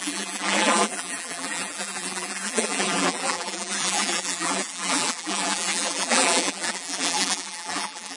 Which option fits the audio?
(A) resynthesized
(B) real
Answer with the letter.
A